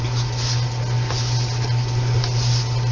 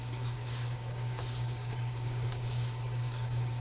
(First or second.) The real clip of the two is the first